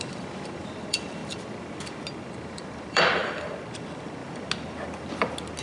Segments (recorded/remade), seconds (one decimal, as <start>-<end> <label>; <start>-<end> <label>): 0.0-1.2 remade; 1.2-2.3 recorded; 2.3-3.2 remade; 3.2-3.8 recorded; 3.8-4.2 remade; 4.2-5.6 recorded